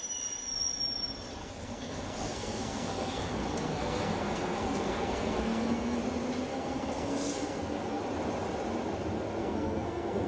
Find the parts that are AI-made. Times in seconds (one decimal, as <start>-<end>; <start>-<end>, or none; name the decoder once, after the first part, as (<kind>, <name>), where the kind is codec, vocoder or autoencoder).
1.4-6.0 (codec, SNAC); 6.5-8.0; 9.4-10.3